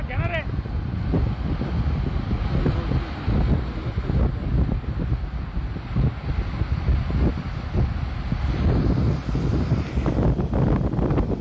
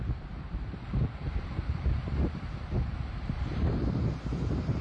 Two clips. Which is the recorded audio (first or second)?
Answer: first